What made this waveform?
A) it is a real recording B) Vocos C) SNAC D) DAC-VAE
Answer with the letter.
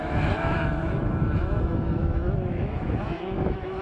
D